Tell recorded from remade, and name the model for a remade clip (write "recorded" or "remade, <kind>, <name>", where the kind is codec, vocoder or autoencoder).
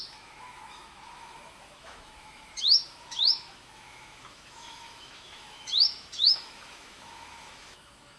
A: remade, autoencoder, DAC-VAE